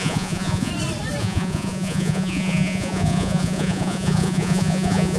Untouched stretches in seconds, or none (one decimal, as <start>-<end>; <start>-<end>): 0.7-1.2